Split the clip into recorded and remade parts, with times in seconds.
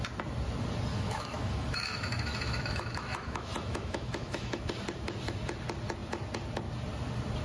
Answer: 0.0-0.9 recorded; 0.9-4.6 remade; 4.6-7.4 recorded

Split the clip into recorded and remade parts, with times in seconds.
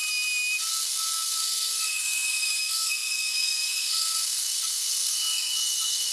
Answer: 0.0-0.7 recorded; 0.7-6.1 remade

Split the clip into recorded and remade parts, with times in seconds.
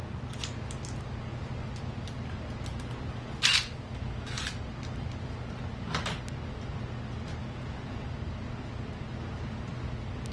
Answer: 0.0-7.4 recorded; 7.4-8.0 remade; 8.0-10.3 recorded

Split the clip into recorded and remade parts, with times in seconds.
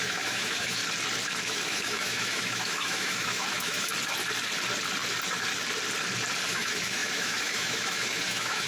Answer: 0.0-0.8 remade; 0.8-1.4 recorded; 1.4-3.9 remade; 3.9-6.5 recorded; 6.5-8.7 remade